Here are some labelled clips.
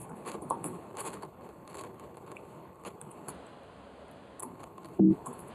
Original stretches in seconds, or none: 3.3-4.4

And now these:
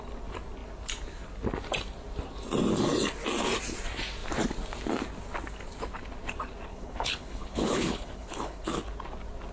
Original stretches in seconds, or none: 0.0-6.7; 8.8-9.5

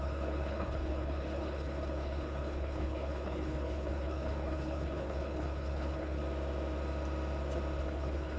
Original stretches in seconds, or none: 6.2-7.8

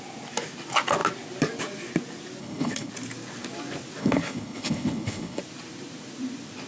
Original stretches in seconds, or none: 0.0-2.4; 2.9-4.0; 5.4-6.7

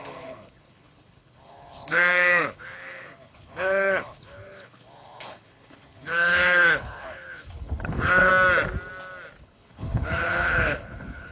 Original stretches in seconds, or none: 8.3-9.4